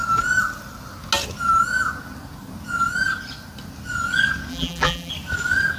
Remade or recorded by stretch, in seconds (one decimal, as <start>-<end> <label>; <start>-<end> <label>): 0.0-4.5 recorded; 4.5-5.1 remade; 5.1-5.8 recorded